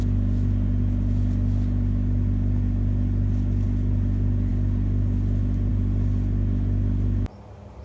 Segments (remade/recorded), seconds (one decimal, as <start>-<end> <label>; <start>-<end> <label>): 0.0-7.8 recorded